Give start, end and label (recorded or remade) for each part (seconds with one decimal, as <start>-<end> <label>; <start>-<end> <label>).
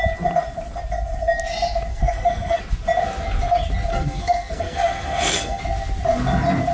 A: 0.0-1.9 recorded; 1.9-2.6 remade; 2.6-3.9 recorded; 3.9-5.6 remade; 5.6-6.7 recorded